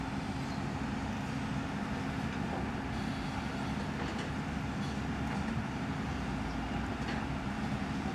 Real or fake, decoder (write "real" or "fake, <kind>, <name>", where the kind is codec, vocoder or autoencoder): real